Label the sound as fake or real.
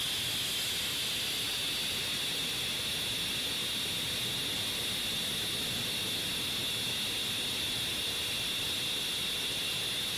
real